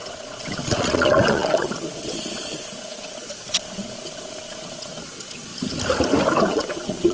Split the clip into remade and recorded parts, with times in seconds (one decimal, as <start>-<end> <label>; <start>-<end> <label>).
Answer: 0.0-5.5 remade; 5.5-6.5 recorded; 6.5-7.1 remade